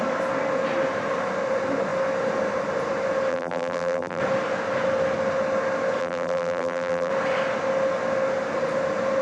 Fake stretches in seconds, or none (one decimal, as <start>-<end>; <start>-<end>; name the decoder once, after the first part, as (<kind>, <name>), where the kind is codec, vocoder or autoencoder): 3.3-4.2 (vocoder, BigVGAN v2); 6.0-7.1